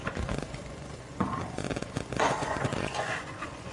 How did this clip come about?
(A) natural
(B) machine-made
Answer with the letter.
B